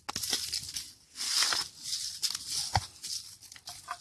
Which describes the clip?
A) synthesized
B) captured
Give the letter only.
B